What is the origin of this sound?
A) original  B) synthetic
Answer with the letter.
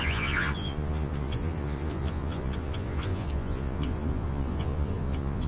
B